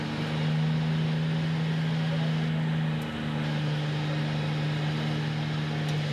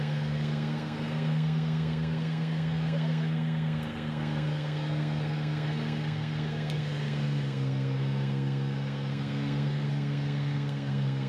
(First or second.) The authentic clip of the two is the first